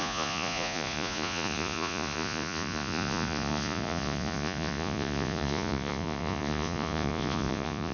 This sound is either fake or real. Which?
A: fake